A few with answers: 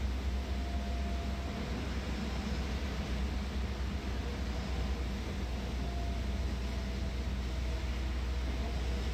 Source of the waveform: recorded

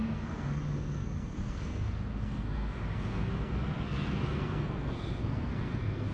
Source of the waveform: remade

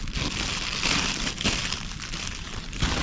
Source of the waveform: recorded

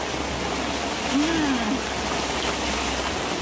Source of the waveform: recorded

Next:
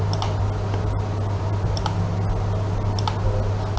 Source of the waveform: recorded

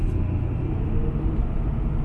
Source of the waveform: recorded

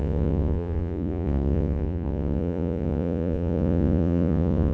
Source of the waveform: remade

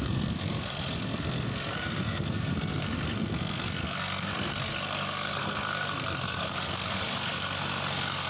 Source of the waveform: remade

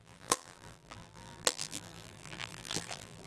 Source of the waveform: remade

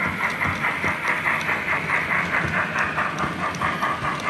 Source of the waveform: recorded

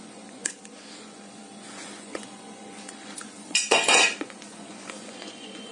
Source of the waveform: remade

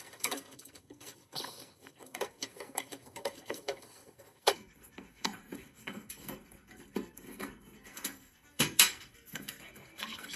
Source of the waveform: remade